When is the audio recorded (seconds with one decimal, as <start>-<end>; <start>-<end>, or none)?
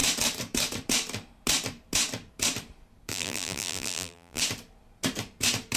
0.0-3.1; 4.4-5.8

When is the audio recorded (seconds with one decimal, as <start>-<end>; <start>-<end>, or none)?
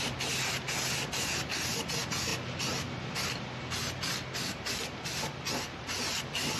0.0-6.6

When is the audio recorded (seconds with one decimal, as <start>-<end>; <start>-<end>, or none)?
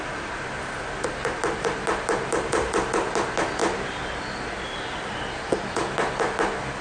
3.6-4.2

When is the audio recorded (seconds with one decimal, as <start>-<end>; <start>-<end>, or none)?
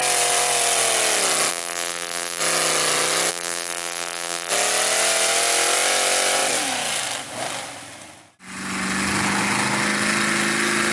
0.0-1.5; 2.4-3.3; 4.5-10.9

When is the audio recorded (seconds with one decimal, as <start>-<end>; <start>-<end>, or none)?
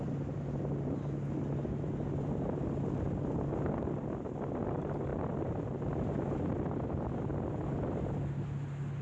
0.0-5.1; 5.8-9.0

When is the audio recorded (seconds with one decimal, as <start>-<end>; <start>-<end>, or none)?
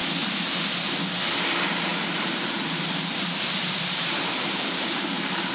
0.6-1.9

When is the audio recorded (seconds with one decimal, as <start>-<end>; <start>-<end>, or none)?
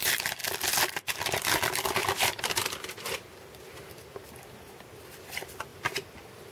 0.0-0.4; 0.9-6.5